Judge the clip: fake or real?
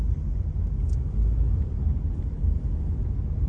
real